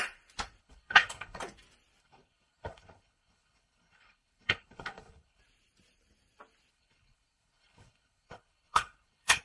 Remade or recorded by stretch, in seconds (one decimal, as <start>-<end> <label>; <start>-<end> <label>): 0.0-0.6 recorded; 0.6-1.4 remade; 1.4-2.0 recorded; 2.0-5.4 remade; 5.4-6.7 recorded; 6.7-9.4 remade